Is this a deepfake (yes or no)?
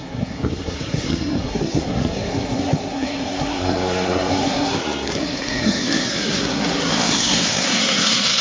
yes